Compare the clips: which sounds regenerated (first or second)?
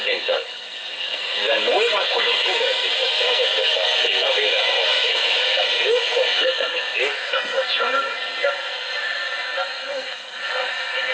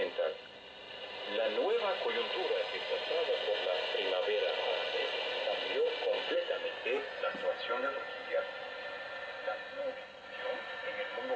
first